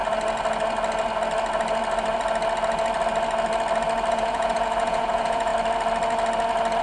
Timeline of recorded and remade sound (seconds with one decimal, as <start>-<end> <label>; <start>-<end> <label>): 0.0-4.1 recorded; 4.1-5.5 remade; 5.5-6.8 recorded